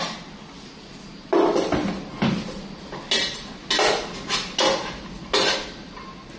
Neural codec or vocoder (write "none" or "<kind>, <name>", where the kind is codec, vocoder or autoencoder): none